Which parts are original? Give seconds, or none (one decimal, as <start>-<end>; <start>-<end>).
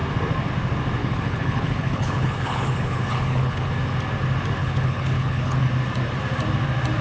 0.0-1.0; 3.7-4.6; 5.7-7.0